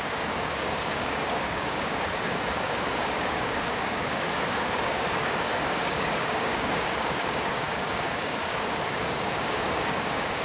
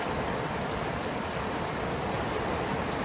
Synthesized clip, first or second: first